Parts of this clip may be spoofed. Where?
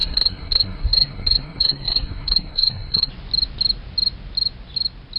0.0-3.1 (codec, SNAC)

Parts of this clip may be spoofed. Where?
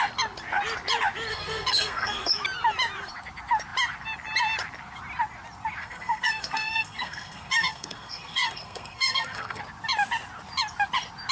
1.3-2.3 (codec, SNAC); 5.8-9.6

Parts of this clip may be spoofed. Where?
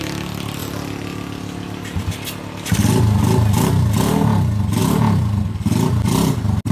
none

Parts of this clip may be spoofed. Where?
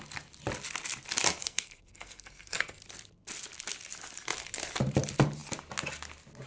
1.4-2.8 (codec, SNAC)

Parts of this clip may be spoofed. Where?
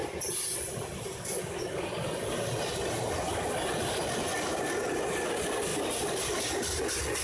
none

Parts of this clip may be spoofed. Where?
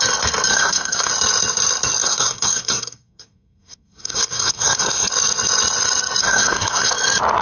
0.5-1.1 (codec, SNAC); 2.0-5.1; 6.2-6.9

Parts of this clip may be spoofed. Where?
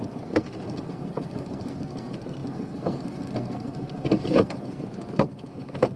0.0-6.0 (codec, SNAC)